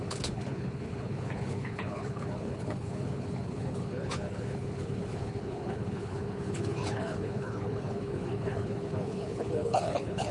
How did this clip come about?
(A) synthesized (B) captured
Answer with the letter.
A